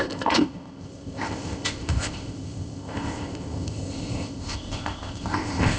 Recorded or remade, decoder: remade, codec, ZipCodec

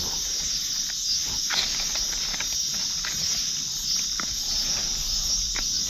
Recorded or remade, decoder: recorded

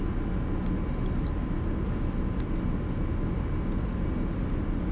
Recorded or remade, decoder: recorded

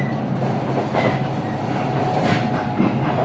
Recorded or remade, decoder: recorded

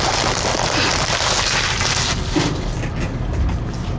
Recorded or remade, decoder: recorded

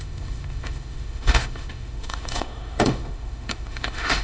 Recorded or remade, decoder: remade, autoencoder, DAC-VAE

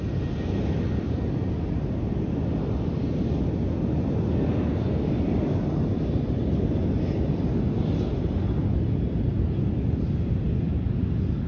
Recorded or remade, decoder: recorded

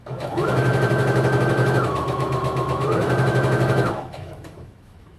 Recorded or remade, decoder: remade, autoencoder, DAC-VAE